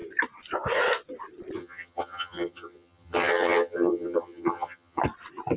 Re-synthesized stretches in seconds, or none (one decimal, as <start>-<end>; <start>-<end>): 1.6-5.0